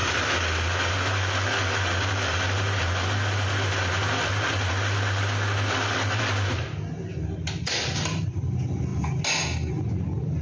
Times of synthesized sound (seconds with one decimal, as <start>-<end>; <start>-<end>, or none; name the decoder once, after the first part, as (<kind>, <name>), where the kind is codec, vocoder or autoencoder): none